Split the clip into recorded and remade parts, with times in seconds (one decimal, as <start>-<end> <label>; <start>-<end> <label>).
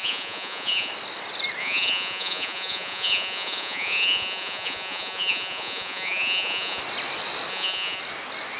0.0-0.9 remade; 0.9-1.6 recorded; 1.6-6.8 remade; 6.8-7.5 recorded; 7.5-8.0 remade; 8.0-8.6 recorded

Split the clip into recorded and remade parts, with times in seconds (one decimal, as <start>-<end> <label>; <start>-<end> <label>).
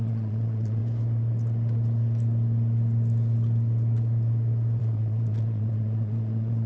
0.0-0.8 remade; 0.8-4.8 recorded; 4.8-6.7 remade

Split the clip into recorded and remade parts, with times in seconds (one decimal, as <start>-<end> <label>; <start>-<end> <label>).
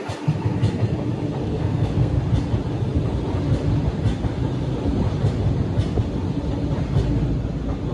0.0-1.4 recorded; 1.4-2.2 remade; 2.2-7.9 recorded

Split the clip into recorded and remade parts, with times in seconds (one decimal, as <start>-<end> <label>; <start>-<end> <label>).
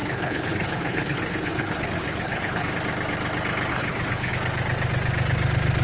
0.0-2.7 remade; 2.7-3.7 recorded; 3.7-4.3 remade; 4.3-5.8 recorded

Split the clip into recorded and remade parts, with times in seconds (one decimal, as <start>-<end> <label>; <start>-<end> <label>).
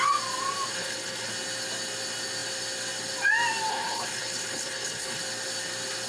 0.0-0.7 recorded; 0.7-1.3 remade; 1.3-3.7 recorded; 3.7-5.2 remade; 5.2-6.1 recorded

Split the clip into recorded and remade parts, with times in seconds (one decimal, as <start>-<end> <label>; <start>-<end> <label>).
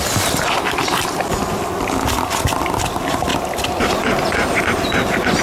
0.0-5.4 recorded